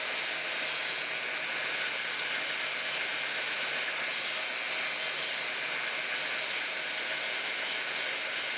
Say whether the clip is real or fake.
real